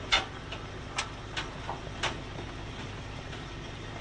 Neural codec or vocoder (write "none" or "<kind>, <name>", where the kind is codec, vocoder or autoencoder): none